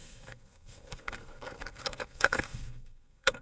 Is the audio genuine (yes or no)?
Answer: no